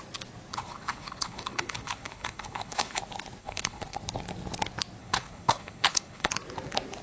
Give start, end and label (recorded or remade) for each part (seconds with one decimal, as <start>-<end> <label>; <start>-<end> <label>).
0.0-0.5 recorded; 0.5-3.0 remade; 3.0-3.4 recorded; 3.4-4.0 remade; 4.0-5.0 recorded; 5.0-6.3 remade; 6.3-7.0 recorded